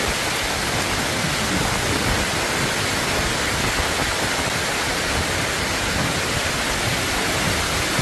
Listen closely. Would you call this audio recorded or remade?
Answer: recorded